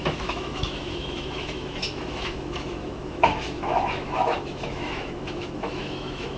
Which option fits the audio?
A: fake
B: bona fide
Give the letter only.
A